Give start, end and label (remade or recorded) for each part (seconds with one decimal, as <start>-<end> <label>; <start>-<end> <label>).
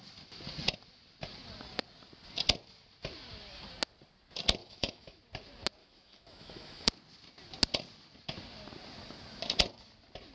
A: 0.0-4.6 recorded; 4.6-5.2 remade; 5.2-5.8 recorded; 5.8-6.9 remade; 6.9-10.3 recorded